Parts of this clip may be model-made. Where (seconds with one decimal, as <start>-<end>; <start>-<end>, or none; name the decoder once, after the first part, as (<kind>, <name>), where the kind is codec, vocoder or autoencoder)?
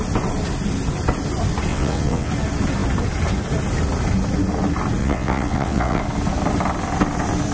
1.7-2.3 (vocoder, WaveNeXt); 5.0-6.0